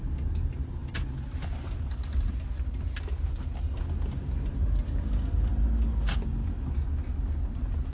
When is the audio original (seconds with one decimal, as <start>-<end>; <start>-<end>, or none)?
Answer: 0.0-7.9